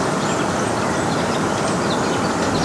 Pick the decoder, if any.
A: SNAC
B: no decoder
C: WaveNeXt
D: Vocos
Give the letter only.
B